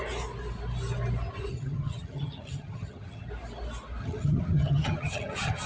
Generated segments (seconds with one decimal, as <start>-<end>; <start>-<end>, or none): 1.5-3.3; 4.0-5.7